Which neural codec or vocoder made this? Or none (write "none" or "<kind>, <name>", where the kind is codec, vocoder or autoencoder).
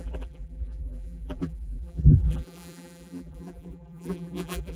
vocoder, BigVGAN v2